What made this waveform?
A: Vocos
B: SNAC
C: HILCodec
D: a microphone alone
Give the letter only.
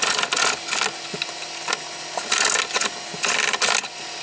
D